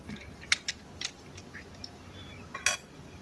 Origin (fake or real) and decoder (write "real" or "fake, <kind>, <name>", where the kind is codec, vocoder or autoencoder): real